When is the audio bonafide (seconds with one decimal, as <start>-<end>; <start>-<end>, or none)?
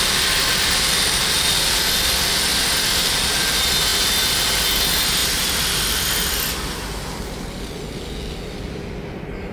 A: 0.0-9.5